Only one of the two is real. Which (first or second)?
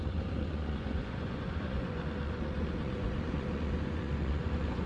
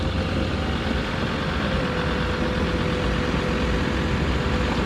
second